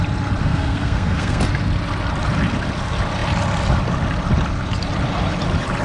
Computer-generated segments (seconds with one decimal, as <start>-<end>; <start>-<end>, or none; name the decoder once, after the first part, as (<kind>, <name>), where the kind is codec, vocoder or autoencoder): 0.4-1.4 (codec, SNAC)